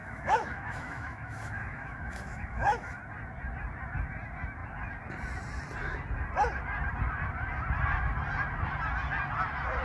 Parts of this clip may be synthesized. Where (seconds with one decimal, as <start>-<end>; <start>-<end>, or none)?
0.0-3.0